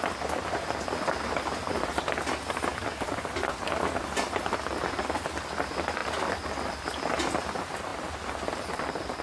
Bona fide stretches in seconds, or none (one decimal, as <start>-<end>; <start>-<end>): 0.0-2.7; 3.3-9.2